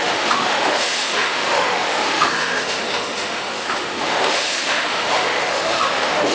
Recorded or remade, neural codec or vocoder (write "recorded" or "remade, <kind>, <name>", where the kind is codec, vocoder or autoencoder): remade, autoencoder, DAC-VAE